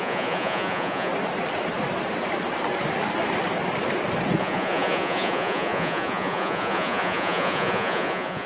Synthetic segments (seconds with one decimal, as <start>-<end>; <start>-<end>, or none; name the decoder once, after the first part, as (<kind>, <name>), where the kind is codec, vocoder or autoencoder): 0.0-1.1 (vocoder, Vocos); 4.4-8.5